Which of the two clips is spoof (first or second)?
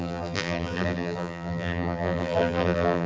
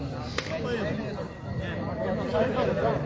first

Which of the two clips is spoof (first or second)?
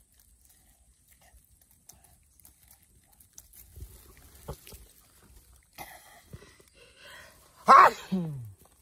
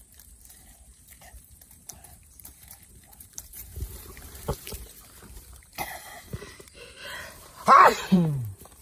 second